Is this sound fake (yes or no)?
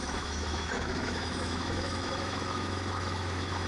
yes